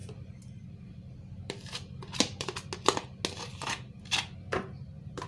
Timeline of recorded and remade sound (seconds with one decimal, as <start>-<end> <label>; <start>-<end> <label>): 0.0-2.7 remade; 2.7-5.3 recorded